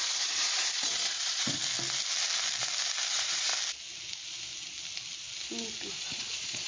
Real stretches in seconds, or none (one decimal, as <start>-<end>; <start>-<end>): 1.6-3.1; 3.5-5.9